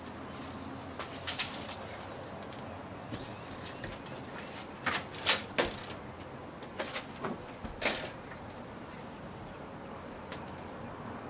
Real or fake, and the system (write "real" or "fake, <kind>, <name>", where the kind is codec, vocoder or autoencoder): real